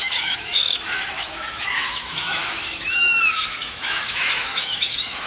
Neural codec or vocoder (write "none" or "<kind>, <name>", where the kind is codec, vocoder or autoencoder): autoencoder, DAC-VAE